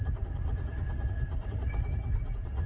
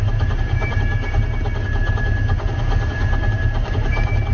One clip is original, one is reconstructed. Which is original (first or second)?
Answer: second